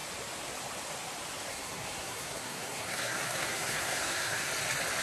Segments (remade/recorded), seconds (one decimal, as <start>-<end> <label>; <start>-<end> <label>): 0.0-1.5 recorded; 1.5-4.5 remade; 4.5-5.0 recorded